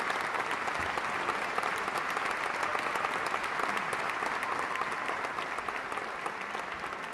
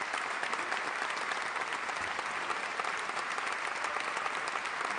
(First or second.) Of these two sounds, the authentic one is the first